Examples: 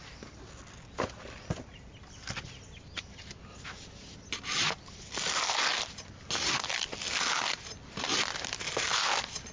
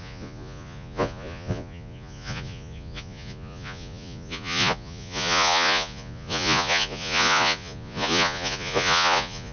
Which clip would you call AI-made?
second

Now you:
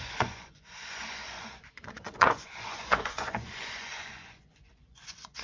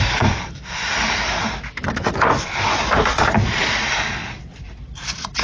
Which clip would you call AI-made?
first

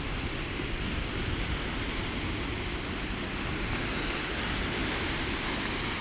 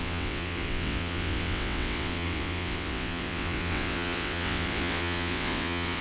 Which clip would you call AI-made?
second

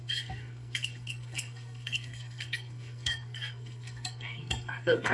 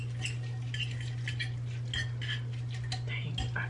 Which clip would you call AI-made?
first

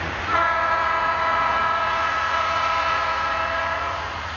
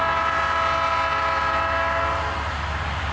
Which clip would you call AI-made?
first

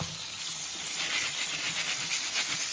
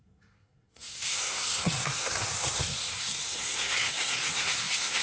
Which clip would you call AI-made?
second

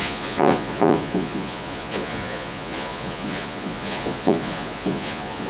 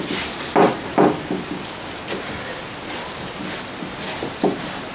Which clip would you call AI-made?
first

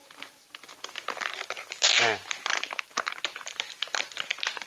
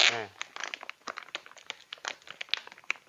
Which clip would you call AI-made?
first